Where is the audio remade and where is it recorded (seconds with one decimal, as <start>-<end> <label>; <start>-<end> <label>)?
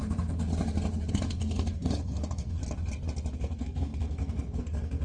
0.0-0.5 remade; 0.5-1.1 recorded; 1.1-2.6 remade; 2.6-3.3 recorded; 3.3-5.0 remade